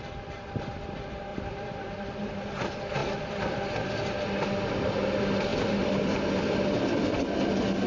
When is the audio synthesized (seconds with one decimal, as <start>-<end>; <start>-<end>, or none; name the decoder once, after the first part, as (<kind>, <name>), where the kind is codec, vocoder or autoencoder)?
1.3-2.5 (vocoder, BigVGAN v2); 3.0-3.9; 5.5-7.2